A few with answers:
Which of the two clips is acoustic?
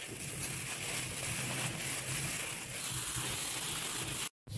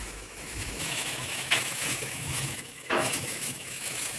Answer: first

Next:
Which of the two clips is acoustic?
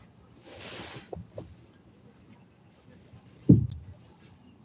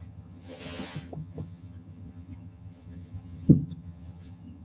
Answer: first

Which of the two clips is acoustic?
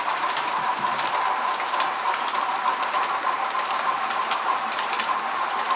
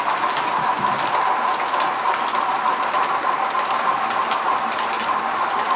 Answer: second